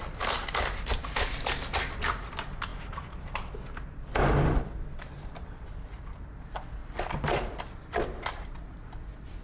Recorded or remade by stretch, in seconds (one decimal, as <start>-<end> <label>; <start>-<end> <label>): 0.0-2.7 recorded; 2.7-6.2 remade; 6.2-6.8 recorded; 6.8-8.8 remade; 8.8-9.4 recorded